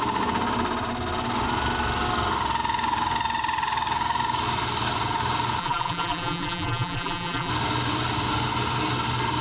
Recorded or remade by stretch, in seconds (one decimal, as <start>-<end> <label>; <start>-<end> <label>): 0.0-5.6 recorded; 5.6-7.5 remade; 7.5-9.4 recorded